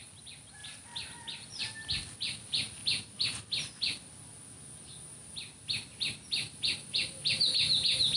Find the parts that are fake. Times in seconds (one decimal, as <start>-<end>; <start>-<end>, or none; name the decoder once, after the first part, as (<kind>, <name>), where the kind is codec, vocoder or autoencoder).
none